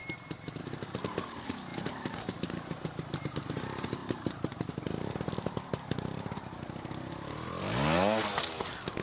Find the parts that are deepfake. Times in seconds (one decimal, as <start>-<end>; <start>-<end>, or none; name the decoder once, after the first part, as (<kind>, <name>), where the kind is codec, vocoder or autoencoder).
1.7-3.2 (vocoder, BigVGAN v2); 4.0-4.7